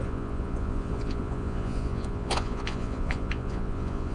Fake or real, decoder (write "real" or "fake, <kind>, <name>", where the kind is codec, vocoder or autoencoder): fake, vocoder, Vocos